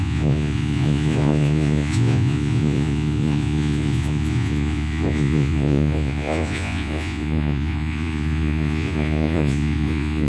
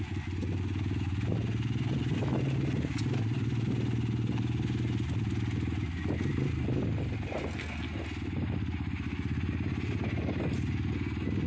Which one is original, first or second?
second